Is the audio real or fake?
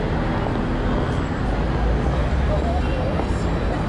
real